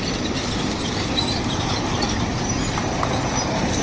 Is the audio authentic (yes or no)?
yes